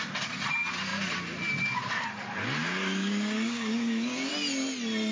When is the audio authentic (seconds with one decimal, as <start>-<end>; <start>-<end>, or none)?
0.0-2.6; 4.3-5.1